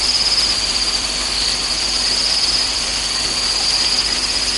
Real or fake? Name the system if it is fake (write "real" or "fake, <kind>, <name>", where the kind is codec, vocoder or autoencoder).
fake, vocoder, BigVGAN v2